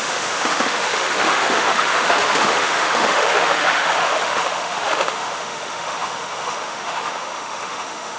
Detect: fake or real fake